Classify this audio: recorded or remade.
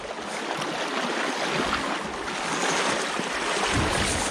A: recorded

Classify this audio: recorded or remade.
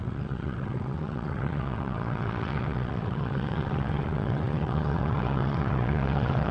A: remade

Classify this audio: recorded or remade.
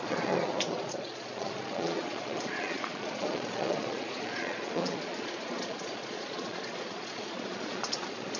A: remade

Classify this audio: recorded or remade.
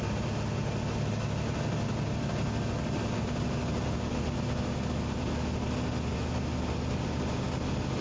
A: recorded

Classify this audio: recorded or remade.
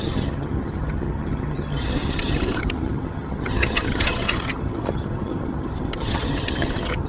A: remade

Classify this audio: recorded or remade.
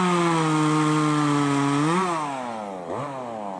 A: recorded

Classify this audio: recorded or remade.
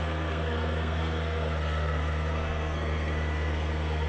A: remade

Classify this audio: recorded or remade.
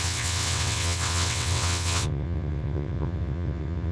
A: remade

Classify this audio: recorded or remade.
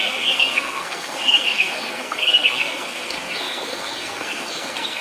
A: remade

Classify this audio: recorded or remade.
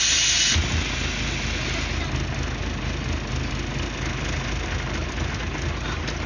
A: recorded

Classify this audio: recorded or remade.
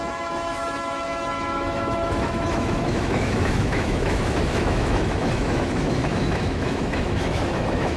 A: remade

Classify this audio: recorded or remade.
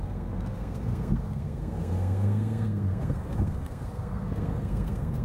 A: remade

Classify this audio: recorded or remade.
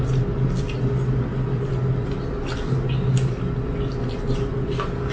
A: recorded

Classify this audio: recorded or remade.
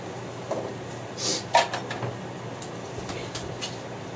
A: recorded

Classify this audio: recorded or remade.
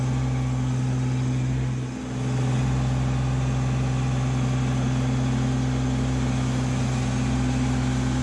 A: recorded